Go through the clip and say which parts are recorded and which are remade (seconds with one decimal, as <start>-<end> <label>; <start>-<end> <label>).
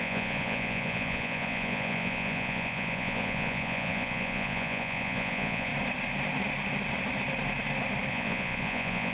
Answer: 0.0-5.7 remade; 5.7-8.1 recorded; 8.1-9.1 remade